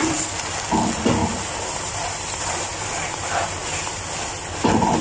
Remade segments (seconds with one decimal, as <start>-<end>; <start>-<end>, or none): 0.0-0.5; 1.2-3.7